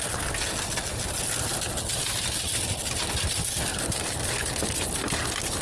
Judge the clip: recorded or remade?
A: recorded